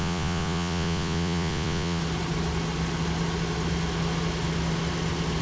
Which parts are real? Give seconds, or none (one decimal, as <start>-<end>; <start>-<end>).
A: 2.0-5.4